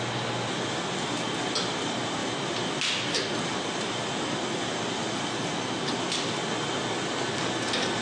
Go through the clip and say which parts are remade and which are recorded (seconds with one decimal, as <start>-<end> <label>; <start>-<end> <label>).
0.0-8.0 recorded